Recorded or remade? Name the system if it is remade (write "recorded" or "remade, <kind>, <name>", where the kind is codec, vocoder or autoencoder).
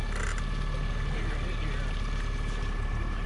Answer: recorded